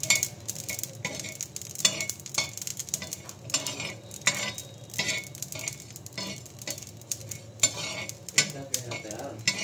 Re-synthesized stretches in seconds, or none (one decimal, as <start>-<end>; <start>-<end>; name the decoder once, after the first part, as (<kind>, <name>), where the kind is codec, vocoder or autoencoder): none